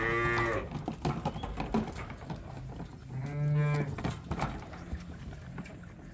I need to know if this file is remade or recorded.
recorded